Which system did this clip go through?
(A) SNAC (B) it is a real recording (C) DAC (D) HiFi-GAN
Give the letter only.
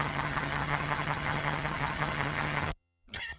D